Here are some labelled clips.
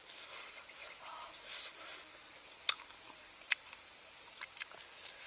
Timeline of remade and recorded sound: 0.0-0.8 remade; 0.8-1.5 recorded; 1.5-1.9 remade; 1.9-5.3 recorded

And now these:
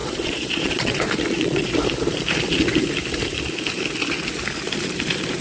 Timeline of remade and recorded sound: 0.0-1.7 remade; 1.7-5.4 recorded

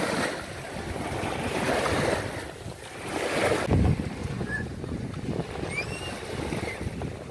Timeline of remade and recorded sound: 0.0-4.2 recorded; 4.2-5.1 remade; 5.1-7.3 recorded